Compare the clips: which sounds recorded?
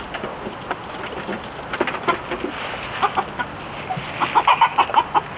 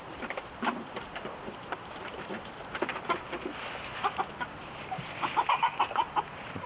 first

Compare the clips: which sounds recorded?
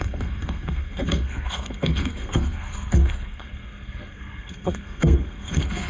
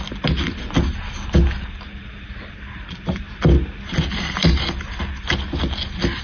second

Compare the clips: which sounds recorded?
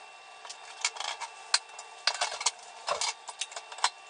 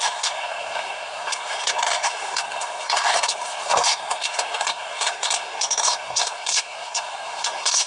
first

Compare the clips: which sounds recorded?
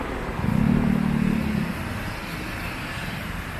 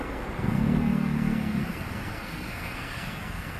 first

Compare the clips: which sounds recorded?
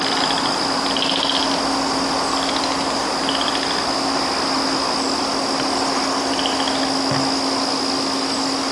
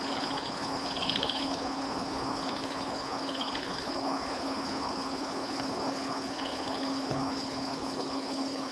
first